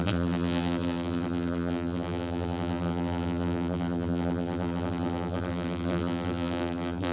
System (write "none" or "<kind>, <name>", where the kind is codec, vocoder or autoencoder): vocoder, BigVGAN v2